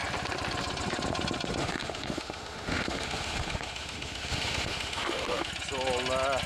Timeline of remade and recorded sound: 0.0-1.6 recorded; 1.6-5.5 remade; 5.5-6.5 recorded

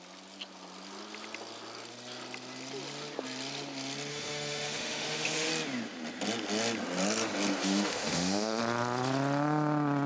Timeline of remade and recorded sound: 0.0-4.1 recorded; 4.1-5.5 remade; 5.5-7.6 recorded; 7.6-8.6 remade; 8.6-10.1 recorded

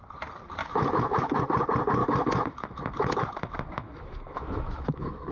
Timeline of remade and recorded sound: 0.0-0.6 recorded; 0.6-1.4 remade; 1.4-2.0 recorded; 2.0-5.3 remade

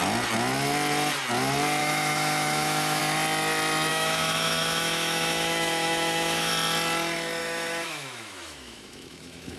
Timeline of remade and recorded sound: 0.0-1.8 recorded; 1.8-3.0 remade; 3.0-3.9 recorded; 3.9-6.5 remade; 6.5-7.4 recorded; 7.4-9.6 remade

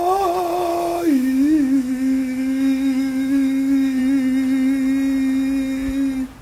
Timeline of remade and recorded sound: 0.0-0.7 recorded; 0.7-4.0 remade; 4.0-6.4 recorded

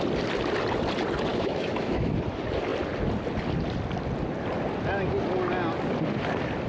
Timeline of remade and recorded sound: 0.0-1.3 recorded; 1.3-2.1 remade; 2.1-6.7 recorded

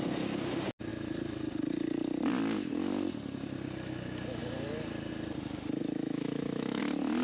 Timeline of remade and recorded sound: 0.0-5.8 recorded; 5.8-6.8 remade; 6.8-7.2 recorded